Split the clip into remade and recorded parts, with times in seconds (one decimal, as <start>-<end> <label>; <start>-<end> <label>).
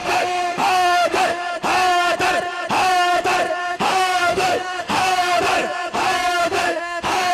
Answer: 0.0-1.4 remade; 1.4-3.6 recorded; 3.6-5.4 remade; 5.4-6.4 recorded; 6.4-7.3 remade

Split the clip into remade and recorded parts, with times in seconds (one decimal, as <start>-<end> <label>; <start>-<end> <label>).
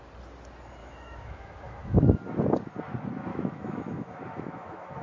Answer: 0.0-0.8 recorded; 0.8-2.3 remade; 2.3-3.3 recorded; 3.3-5.0 remade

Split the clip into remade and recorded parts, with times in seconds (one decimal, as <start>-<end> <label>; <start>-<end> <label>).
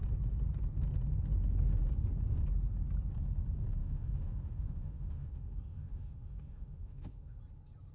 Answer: 0.0-3.8 recorded; 3.8-7.4 remade; 7.4-7.9 recorded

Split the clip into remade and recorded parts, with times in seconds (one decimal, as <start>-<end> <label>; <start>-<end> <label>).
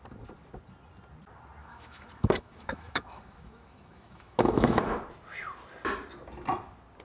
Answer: 0.0-1.6 recorded; 1.6-4.9 remade; 4.9-7.0 recorded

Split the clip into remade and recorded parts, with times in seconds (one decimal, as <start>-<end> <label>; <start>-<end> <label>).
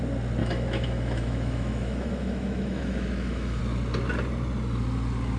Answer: 0.0-0.4 recorded; 0.4-3.6 remade; 3.6-5.4 recorded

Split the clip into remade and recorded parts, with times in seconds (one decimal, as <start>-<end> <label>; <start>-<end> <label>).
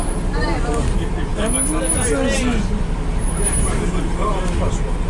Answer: 0.0-5.1 recorded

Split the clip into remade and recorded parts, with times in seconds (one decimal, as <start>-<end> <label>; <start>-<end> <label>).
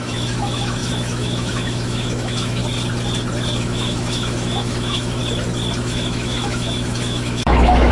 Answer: 0.0-2.6 remade; 2.6-3.6 recorded; 3.6-5.2 remade; 5.2-5.8 recorded; 5.8-7.9 remade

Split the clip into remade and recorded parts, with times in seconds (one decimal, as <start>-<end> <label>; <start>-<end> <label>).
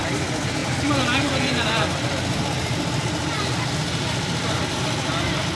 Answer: 0.0-5.5 recorded